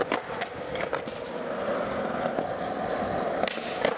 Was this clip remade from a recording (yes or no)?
no